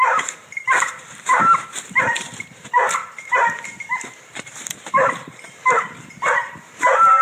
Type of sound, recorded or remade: remade